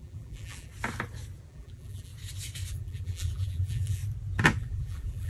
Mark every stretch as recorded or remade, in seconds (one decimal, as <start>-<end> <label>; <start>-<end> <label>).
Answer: 0.0-0.7 remade; 0.7-1.5 recorded; 1.5-2.1 remade; 2.1-2.7 recorded; 2.7-4.0 remade; 4.0-4.6 recorded; 4.6-5.3 remade